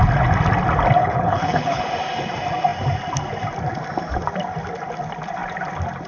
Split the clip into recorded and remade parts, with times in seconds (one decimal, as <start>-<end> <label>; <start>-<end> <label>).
0.0-1.0 recorded; 1.0-1.8 remade; 1.8-6.1 recorded